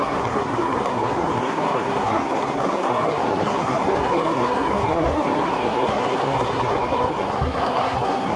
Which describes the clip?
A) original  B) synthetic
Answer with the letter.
B